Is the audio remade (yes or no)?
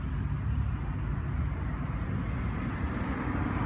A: no